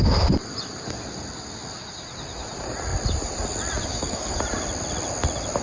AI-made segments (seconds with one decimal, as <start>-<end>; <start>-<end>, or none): 3.9-4.4